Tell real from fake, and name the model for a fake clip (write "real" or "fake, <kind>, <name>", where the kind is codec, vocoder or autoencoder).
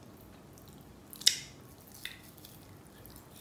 real